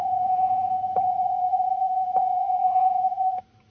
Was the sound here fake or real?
fake